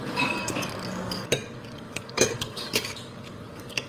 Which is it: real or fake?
fake